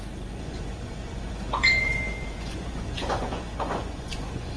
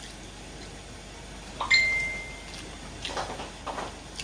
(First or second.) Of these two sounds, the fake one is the first